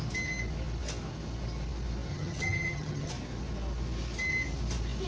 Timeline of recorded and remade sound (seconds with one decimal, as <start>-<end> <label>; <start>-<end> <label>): 0.0-2.1 recorded; 2.1-3.1 remade; 3.1-5.1 recorded